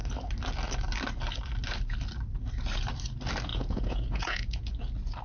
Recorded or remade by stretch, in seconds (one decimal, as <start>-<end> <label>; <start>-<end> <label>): 0.0-3.5 recorded; 3.5-4.7 remade; 4.7-5.2 recorded

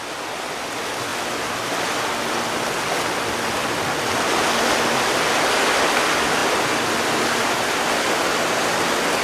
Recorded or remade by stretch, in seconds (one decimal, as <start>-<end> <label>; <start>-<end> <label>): 0.0-9.2 recorded

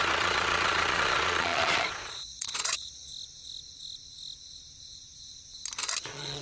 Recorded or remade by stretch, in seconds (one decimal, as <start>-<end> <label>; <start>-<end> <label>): 0.0-3.1 remade; 3.1-6.0 recorded; 6.0-6.4 remade

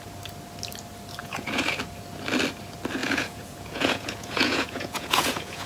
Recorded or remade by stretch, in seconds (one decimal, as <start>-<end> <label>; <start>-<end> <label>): 0.0-1.2 recorded; 1.2-1.8 remade; 1.8-3.0 recorded; 3.0-5.7 remade

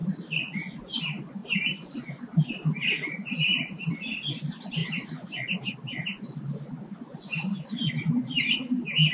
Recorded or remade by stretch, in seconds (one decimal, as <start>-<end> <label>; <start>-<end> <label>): 0.0-9.1 recorded